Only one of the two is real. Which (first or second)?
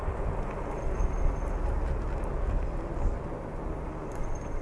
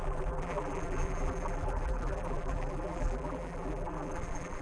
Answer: first